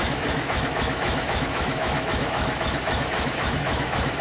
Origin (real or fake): fake